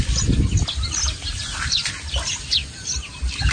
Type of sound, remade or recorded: recorded